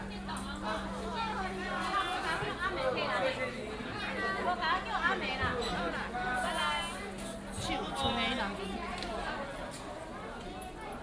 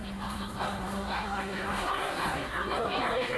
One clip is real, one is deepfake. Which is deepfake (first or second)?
second